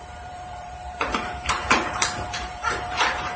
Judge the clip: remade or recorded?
remade